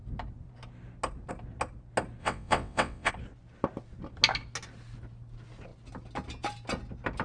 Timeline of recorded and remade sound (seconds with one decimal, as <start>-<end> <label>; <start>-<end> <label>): 0.0-2.2 recorded; 2.2-3.1 remade; 3.1-7.2 recorded

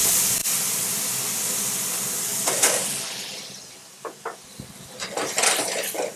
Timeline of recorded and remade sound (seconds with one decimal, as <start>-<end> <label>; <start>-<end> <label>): 0.0-6.2 recorded

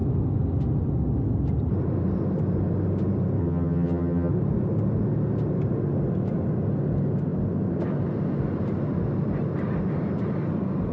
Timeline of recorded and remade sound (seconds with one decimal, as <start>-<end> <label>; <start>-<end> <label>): 0.0-3.4 recorded; 3.4-4.3 remade; 4.3-10.9 recorded